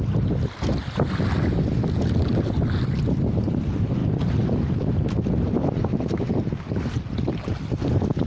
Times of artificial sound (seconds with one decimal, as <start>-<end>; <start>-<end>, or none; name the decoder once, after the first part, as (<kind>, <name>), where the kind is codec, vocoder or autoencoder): none